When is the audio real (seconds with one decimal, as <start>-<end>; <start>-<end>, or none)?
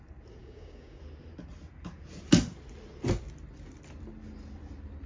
0.0-0.4; 1.0-5.1